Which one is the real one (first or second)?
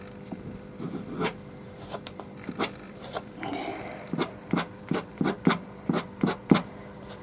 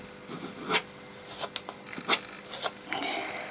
second